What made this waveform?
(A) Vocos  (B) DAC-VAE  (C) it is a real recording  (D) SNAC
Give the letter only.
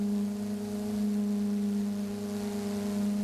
C